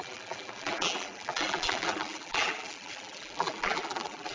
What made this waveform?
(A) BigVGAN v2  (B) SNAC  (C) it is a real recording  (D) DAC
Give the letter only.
A